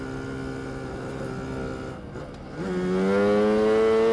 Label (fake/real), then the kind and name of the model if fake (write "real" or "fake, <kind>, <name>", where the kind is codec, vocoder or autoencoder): real